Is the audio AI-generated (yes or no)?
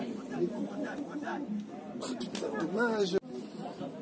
no